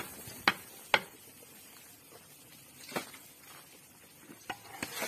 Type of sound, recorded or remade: recorded